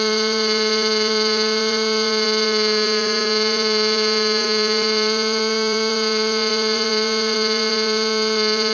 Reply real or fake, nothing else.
fake